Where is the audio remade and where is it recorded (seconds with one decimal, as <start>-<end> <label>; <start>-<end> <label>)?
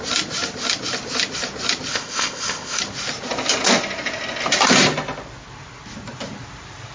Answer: 0.0-1.9 recorded; 1.9-2.8 remade; 2.8-6.9 recorded